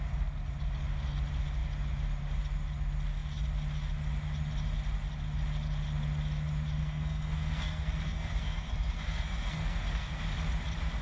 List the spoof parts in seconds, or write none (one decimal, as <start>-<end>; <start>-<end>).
6.8-10.2